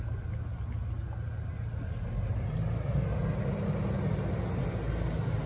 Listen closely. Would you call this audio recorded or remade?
recorded